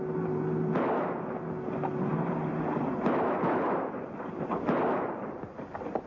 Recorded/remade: recorded